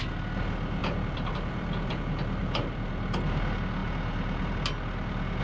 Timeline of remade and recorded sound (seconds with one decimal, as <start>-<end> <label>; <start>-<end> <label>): 0.0-0.8 recorded; 0.8-2.0 remade; 2.0-2.4 recorded; 2.4-2.9 remade; 2.9-5.4 recorded